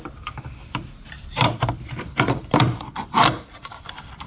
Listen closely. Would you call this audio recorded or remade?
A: remade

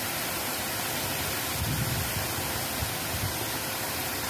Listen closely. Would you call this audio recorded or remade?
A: recorded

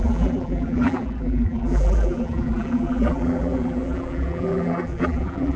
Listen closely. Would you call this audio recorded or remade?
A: remade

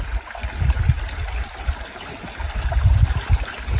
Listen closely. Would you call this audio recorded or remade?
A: remade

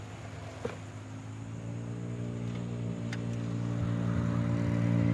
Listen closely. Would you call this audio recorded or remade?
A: recorded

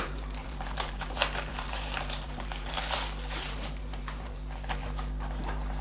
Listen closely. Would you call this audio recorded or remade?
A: remade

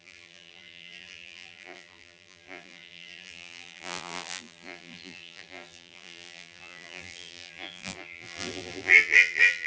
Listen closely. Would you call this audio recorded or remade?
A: remade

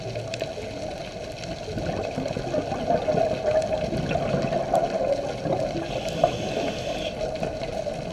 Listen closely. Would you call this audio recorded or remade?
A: recorded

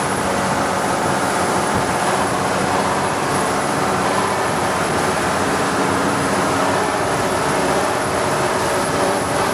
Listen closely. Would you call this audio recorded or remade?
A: remade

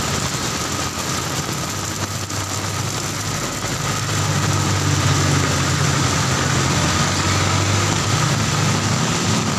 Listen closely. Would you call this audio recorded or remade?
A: recorded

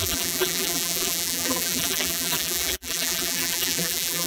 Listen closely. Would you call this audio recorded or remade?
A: remade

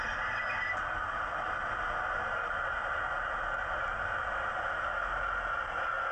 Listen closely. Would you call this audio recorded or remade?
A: recorded